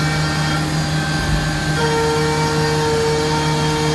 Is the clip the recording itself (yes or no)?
yes